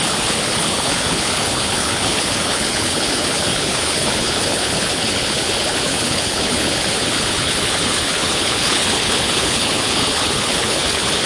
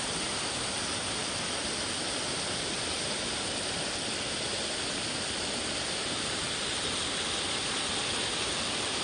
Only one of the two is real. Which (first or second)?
second